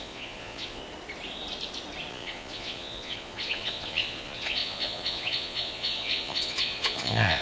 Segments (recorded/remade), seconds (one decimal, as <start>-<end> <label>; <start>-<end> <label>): 0.0-0.8 remade; 0.8-2.1 recorded; 2.1-7.4 remade